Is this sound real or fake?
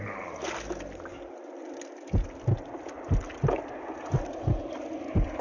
real